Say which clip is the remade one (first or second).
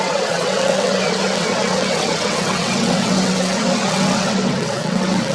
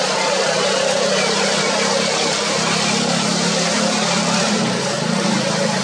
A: first